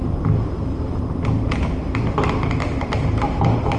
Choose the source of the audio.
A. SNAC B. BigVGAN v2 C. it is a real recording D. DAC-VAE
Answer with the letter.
B